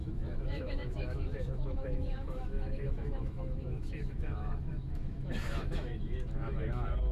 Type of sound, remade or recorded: remade